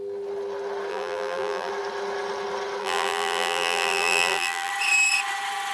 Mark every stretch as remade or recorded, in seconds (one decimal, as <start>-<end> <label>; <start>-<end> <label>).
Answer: 0.0-0.9 recorded; 0.9-1.7 remade; 1.7-2.8 recorded; 2.8-4.7 remade; 4.7-5.7 recorded